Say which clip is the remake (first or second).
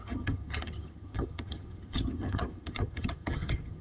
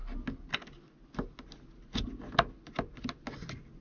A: first